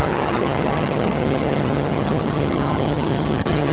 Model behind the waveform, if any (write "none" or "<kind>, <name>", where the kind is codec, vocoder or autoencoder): vocoder, HiFi-GAN